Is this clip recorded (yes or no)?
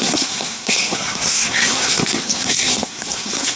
no